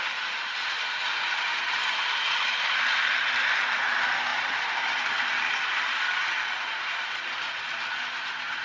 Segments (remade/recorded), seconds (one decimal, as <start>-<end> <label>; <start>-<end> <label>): 0.0-4.3 recorded; 4.3-8.2 remade; 8.2-8.6 recorded